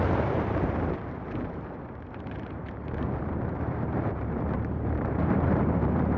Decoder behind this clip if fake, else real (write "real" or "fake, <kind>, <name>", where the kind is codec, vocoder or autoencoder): fake, vocoder, BigVGAN v2